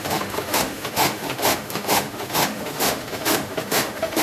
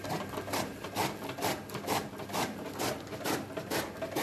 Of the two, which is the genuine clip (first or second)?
second